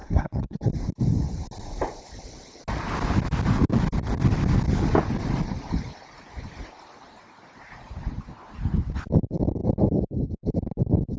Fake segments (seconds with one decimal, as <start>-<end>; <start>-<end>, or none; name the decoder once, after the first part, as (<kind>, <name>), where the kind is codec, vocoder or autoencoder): 0.0-0.7 (codec, SNAC)